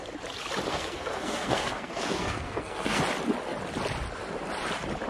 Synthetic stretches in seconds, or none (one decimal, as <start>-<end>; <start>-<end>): 0.7-3.0